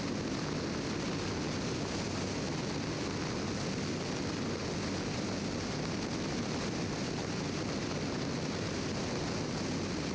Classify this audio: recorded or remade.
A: recorded